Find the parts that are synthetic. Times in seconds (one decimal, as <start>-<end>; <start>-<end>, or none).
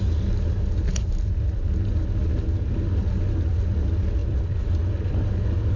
none